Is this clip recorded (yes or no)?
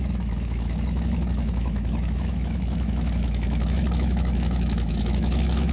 no